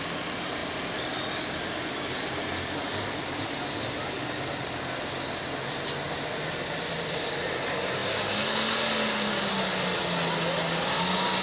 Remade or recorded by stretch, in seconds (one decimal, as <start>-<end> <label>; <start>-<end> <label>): 0.0-11.4 recorded